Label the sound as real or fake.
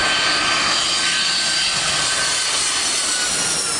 real